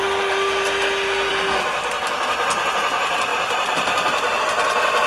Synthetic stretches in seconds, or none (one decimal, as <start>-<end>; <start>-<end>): 3.3-4.4